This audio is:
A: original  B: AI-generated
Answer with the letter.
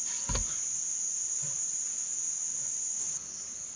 A